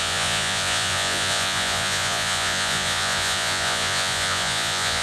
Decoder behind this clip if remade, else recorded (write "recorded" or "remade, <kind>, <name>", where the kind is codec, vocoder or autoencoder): remade, vocoder, Vocos